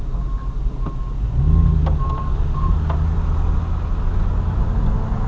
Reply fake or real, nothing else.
real